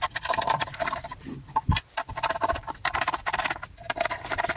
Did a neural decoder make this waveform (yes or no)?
yes